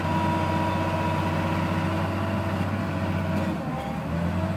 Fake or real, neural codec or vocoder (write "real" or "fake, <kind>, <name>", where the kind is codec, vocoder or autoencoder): real